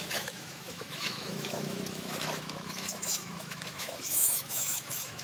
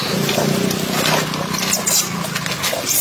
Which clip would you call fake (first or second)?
first